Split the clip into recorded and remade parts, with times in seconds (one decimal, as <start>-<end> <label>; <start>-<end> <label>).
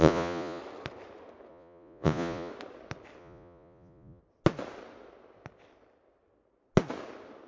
0.0-0.6 remade; 0.6-1.5 recorded; 1.5-2.5 remade; 2.5-3.2 recorded; 3.2-4.2 remade; 4.2-7.5 recorded